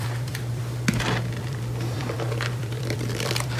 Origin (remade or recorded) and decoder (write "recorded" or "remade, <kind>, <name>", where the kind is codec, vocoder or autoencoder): remade, vocoder, BigVGAN v2